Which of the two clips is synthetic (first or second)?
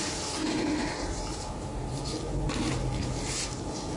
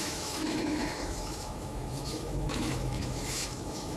second